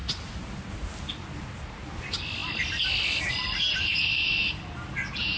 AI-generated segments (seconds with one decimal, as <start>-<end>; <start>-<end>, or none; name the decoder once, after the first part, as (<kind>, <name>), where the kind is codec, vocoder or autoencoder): none